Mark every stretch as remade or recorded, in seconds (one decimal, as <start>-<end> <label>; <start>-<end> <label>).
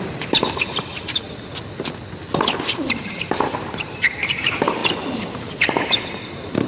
0.0-0.4 remade; 0.4-3.0 recorded; 3.0-6.7 remade